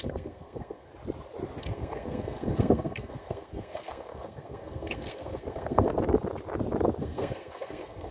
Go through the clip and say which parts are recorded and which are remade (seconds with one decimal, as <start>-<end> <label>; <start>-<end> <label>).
0.0-0.9 remade; 0.9-1.6 recorded; 1.6-5.9 remade; 5.9-7.0 recorded; 7.0-8.1 remade